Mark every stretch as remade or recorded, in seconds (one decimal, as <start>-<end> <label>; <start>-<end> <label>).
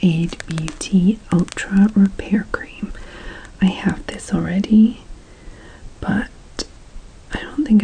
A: 0.0-7.8 recorded